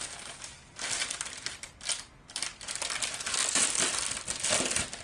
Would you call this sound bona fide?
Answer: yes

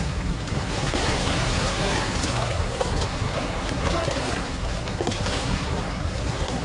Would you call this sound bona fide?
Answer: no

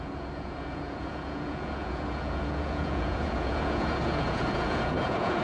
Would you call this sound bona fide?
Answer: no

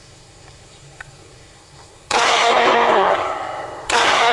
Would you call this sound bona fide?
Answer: no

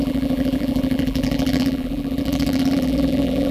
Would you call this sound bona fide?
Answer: no